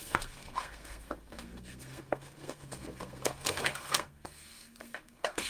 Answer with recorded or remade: remade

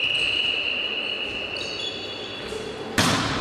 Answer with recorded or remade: recorded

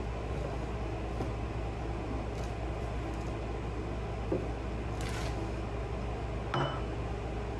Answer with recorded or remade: recorded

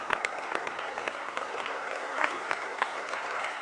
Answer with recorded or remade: remade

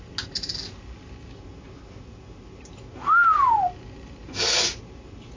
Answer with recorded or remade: recorded